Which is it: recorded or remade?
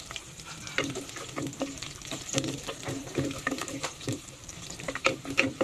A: remade